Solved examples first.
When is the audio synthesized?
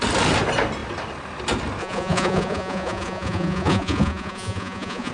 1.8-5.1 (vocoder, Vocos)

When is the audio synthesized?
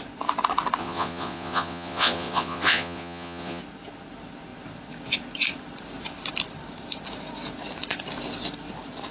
0.8-3.6 (vocoder, Vocos)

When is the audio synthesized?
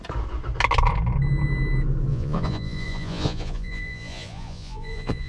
2.1-5.3 (vocoder, Vocos)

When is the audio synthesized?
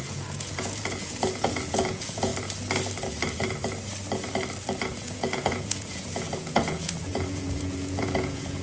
0.0-2.3 (vocoder, Vocos); 4.8-8.6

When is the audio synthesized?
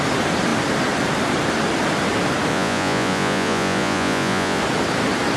2.5-4.6 (vocoder, Vocos)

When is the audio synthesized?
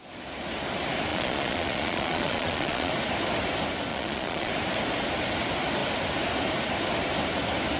1.1-2.9 (vocoder, Vocos); 3.9-4.5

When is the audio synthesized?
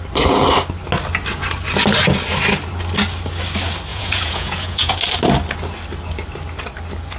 3.9-4.9 (vocoder, Vocos)